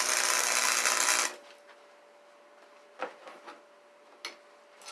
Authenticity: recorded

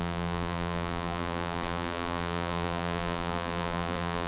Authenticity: remade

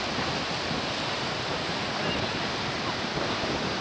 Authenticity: recorded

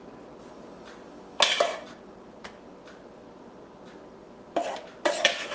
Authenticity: recorded